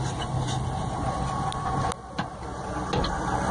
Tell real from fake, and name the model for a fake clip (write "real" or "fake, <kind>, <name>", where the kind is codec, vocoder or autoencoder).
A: real